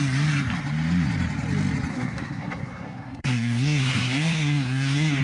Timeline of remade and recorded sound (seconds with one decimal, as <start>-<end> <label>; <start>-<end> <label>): 0.0-1.9 recorded; 1.9-5.2 remade